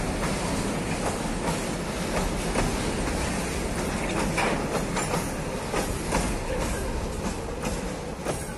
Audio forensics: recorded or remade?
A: recorded